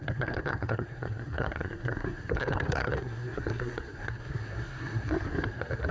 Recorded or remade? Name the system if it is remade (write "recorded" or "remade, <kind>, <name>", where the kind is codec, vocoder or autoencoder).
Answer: remade, codec, SNAC